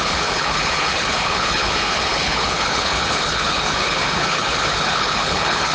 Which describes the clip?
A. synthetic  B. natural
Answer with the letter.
A